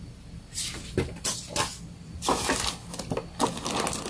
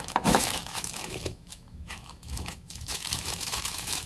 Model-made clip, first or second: second